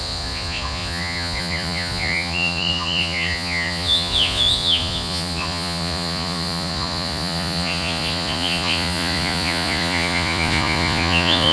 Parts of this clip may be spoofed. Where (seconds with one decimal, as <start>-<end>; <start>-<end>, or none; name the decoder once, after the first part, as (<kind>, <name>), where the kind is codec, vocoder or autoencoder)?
0.0-11.5 (vocoder, Vocos)